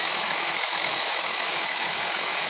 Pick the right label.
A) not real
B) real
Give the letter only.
A